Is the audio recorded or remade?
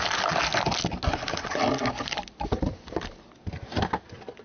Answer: recorded